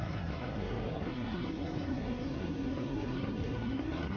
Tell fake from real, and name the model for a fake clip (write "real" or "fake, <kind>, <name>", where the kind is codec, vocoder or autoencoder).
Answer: fake, codec, SNAC